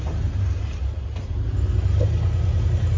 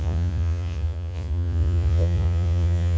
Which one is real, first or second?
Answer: first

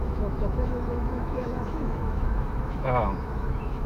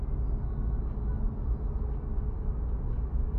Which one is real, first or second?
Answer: second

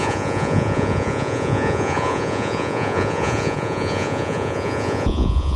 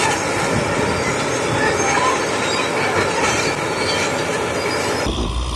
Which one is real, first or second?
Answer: second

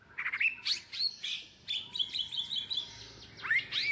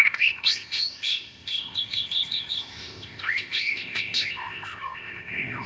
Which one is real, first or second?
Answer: first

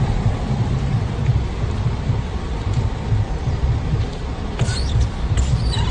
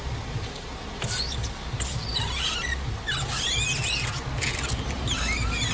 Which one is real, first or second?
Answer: second